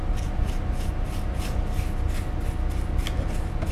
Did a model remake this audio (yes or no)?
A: no